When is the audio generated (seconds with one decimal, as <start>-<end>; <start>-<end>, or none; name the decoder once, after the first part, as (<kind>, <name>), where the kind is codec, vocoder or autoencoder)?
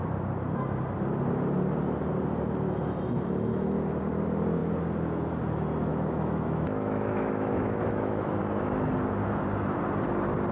5.9-8.4 (autoencoder, DAC-VAE)